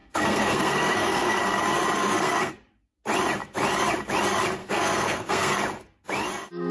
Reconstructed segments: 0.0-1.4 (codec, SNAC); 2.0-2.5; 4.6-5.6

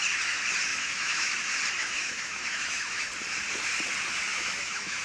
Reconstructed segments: 0.7-1.3 (autoencoder, DAC-VAE); 1.8-3.1; 4.3-5.0

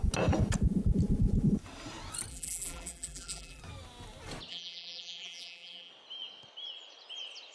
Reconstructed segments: 2.3-3.6 (vocoder, BigVGAN v2); 4.5-5.9

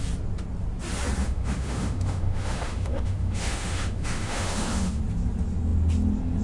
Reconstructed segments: 1.2-5.0 (autoencoder, DAC-VAE)

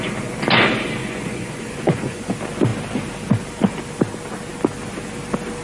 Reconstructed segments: 1.0-2.3 (vocoder, Vocos)

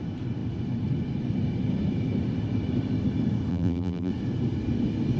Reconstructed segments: 3.5-4.1 (vocoder, BigVGAN v2)